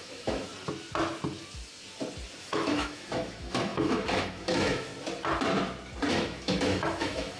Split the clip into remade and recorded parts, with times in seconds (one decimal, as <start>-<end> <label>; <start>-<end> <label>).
0.0-0.5 remade; 0.5-2.4 recorded; 2.4-4.9 remade; 4.9-6.1 recorded; 6.1-7.4 remade